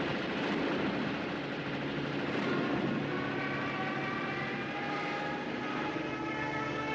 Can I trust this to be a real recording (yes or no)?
yes